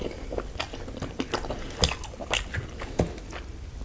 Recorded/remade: recorded